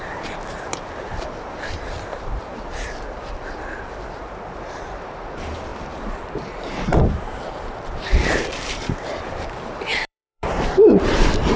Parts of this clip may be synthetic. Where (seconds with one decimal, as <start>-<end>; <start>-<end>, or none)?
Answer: 0.0-11.6